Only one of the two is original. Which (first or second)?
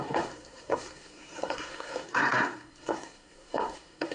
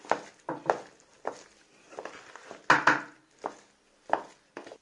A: second